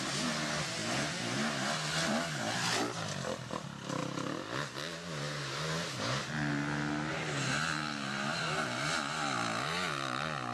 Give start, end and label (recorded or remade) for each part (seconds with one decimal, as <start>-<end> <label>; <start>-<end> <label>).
0.0-10.5 recorded